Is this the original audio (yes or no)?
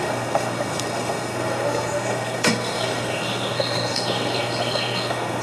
no